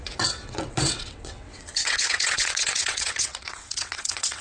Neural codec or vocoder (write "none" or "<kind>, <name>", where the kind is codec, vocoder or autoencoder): vocoder, WaveNeXt